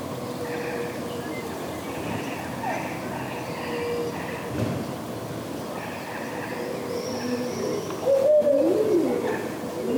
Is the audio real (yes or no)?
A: yes